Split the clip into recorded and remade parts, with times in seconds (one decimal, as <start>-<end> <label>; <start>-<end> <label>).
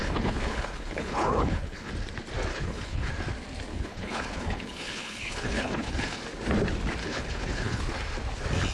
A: 0.0-1.9 remade; 1.9-2.5 recorded; 2.5-3.1 remade; 3.1-3.7 recorded; 3.7-6.2 remade; 6.2-7.0 recorded; 7.0-7.8 remade; 7.8-8.7 recorded